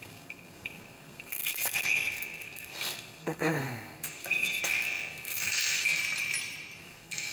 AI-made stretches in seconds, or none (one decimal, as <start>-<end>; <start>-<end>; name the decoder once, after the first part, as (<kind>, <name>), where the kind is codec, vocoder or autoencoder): 0.0-6.0 (codec, SNAC); 6.8-7.3